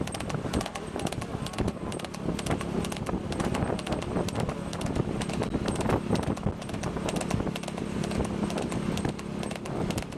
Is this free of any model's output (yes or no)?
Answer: yes